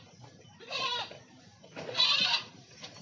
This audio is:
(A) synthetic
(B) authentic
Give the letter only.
A